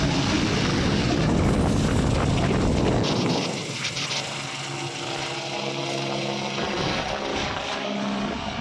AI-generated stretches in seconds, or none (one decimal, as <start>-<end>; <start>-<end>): 0.7-1.2; 7.3-8.6